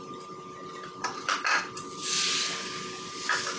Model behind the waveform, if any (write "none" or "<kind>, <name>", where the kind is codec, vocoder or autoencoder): none